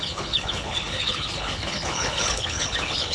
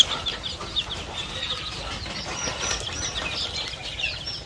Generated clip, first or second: first